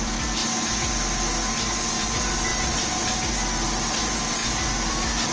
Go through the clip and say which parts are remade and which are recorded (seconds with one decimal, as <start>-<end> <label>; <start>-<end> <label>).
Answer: 0.0-5.3 recorded